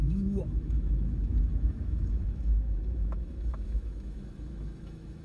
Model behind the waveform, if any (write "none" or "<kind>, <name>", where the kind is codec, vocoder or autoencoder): autoencoder, DAC-VAE